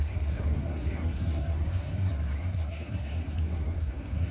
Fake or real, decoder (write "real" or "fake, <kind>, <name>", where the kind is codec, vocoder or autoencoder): fake, codec, SNAC